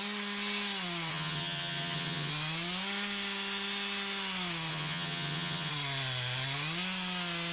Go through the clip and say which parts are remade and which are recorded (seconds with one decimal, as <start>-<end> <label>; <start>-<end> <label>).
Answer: 0.0-1.1 recorded; 1.1-2.3 remade; 2.3-4.7 recorded; 4.7-5.7 remade; 5.7-7.5 recorded